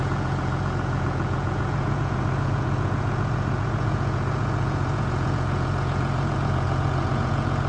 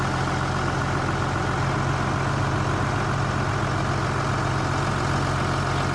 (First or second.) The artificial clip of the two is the first